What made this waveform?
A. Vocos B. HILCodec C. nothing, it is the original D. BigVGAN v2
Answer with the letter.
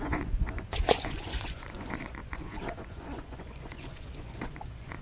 A